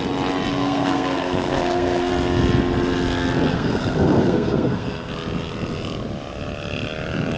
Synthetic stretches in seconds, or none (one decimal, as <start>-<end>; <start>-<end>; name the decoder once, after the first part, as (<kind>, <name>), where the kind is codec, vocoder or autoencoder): 0.5-2.1 (codec, SNAC); 3.5-5.1